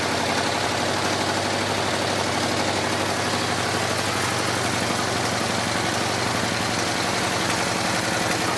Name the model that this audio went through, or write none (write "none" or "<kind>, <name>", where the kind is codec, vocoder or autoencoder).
none